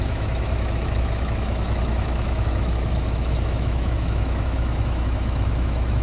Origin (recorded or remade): remade